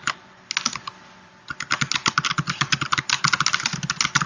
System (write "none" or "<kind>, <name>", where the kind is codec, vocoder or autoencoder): none